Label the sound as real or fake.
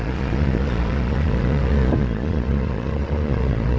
fake